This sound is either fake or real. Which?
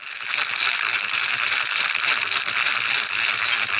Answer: real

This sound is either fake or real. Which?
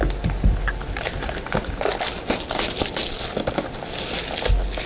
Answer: real